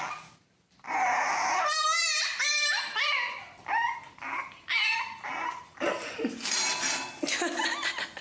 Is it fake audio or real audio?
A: real